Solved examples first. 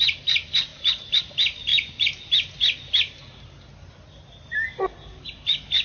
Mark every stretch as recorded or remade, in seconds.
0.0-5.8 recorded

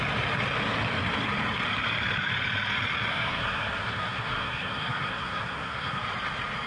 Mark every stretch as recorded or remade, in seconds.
0.0-3.1 recorded; 3.1-6.0 remade; 6.0-6.7 recorded

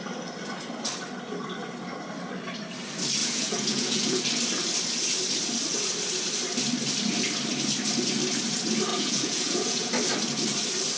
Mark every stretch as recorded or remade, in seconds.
0.0-3.2 recorded; 3.2-4.2 remade; 4.2-8.9 recorded; 8.9-9.9 remade; 9.9-11.0 recorded